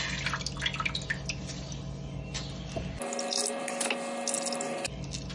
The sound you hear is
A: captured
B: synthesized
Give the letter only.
A